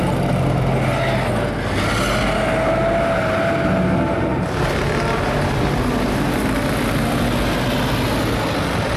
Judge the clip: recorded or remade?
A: recorded